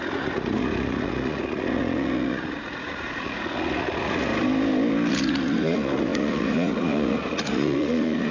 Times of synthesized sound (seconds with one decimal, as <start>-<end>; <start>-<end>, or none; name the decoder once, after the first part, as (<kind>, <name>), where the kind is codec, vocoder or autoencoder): 0.0-4.3 (vocoder, Vocos); 5.1-8.3